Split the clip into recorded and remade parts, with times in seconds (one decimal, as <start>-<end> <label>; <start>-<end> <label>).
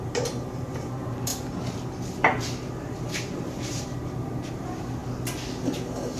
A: 0.0-1.3 remade; 1.3-2.9 recorded; 2.9-5.0 remade; 5.0-6.2 recorded